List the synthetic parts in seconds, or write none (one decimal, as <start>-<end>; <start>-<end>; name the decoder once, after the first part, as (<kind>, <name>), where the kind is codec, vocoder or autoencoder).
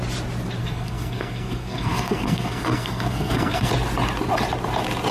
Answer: 0.6-3.7 (codec, SNAC)